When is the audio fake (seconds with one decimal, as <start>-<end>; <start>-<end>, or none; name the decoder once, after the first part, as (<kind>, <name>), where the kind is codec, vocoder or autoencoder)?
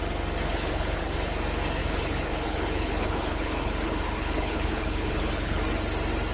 0.5-1.3 (codec, HILCodec); 1.8-5.6